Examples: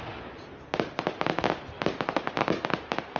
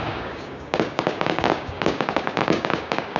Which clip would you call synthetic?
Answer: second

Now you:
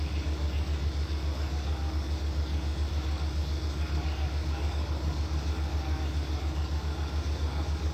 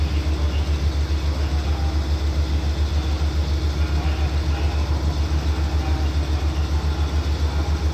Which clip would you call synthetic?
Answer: first